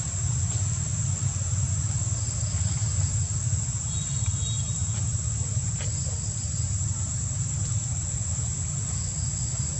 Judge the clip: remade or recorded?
recorded